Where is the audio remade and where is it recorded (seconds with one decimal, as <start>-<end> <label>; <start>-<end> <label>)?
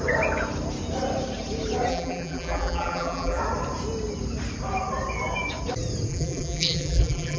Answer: 0.0-1.9 recorded; 1.9-3.4 remade; 3.4-6.1 recorded; 6.1-7.4 remade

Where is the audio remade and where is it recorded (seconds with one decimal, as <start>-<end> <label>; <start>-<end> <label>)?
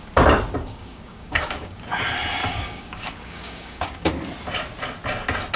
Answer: 0.0-0.6 recorded; 0.6-1.8 remade; 1.8-2.4 recorded; 2.4-4.1 remade; 4.1-5.6 recorded